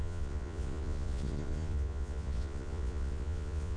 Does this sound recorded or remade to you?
remade